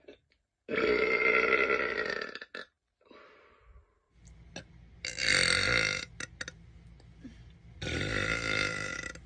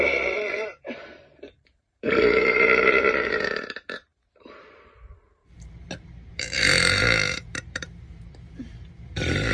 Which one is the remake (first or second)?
second